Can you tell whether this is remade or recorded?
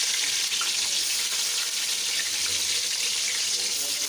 recorded